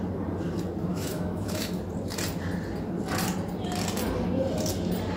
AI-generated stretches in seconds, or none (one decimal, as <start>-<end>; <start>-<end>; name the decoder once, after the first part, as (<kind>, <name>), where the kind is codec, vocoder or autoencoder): 0.9-1.8 (autoencoder, DAC-VAE)